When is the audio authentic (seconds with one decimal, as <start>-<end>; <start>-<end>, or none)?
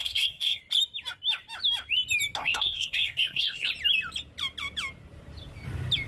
0.6-2.4; 3.7-6.1